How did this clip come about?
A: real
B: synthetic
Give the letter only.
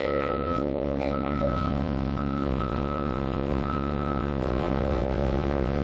B